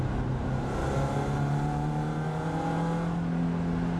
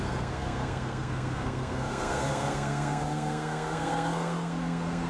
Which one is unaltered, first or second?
first